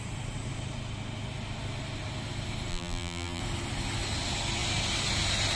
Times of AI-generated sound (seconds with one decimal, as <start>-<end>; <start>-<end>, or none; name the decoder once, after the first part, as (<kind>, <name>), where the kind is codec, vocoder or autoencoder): 2.7-3.4 (vocoder, BigVGAN v2)